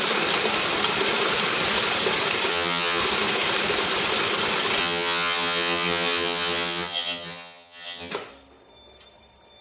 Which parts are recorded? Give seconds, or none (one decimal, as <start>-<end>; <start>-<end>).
0.0-2.5; 3.0-4.8; 8.1-9.6